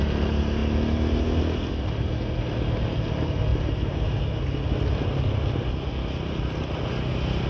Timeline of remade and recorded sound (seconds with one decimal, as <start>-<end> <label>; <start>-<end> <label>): 0.0-7.5 recorded